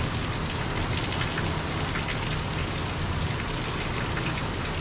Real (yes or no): yes